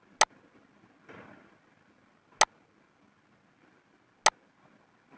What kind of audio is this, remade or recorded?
recorded